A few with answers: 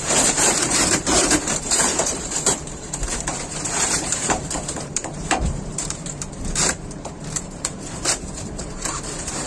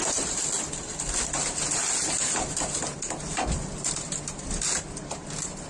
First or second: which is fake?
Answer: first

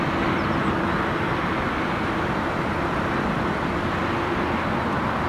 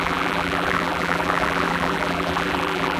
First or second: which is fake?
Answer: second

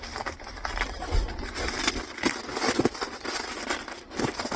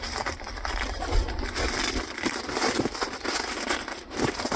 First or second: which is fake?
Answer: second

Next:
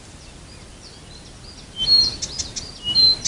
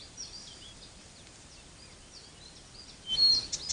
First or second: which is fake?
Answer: second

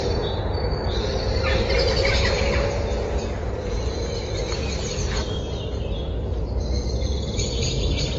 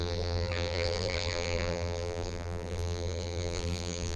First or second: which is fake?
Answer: second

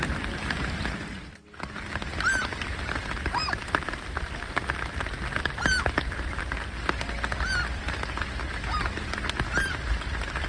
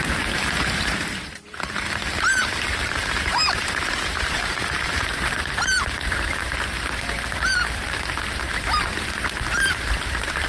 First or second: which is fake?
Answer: second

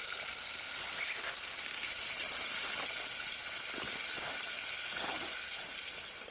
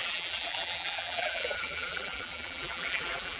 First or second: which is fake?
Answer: second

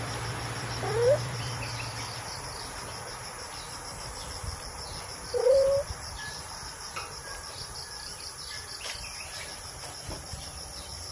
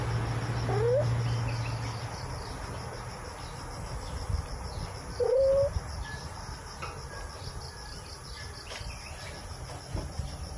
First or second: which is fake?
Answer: first